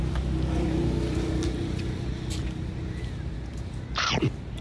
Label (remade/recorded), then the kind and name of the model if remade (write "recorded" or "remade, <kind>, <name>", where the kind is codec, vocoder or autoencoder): recorded